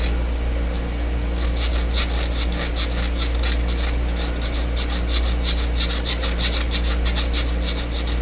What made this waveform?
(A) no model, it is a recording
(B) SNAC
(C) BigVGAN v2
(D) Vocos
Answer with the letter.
A